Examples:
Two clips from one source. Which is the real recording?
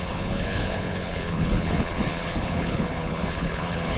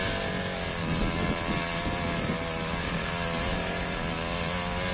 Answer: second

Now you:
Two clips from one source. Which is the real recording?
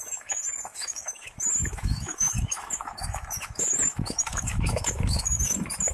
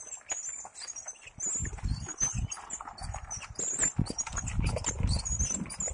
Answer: second